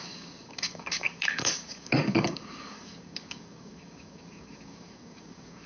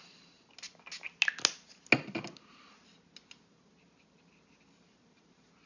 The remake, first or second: first